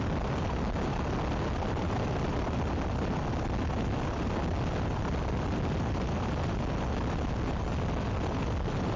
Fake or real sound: real